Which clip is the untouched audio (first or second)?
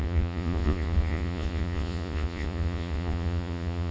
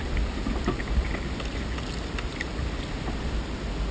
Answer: second